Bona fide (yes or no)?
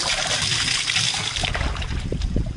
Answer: yes